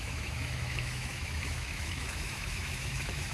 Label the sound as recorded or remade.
remade